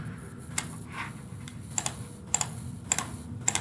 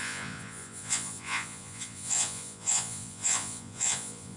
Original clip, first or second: first